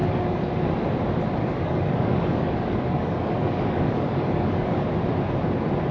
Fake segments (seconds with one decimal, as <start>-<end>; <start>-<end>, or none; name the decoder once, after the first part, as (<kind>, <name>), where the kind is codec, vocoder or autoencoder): 0.0-0.6 (codec, DAC); 1.4-4.9